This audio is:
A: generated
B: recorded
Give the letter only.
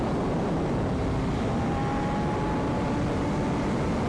B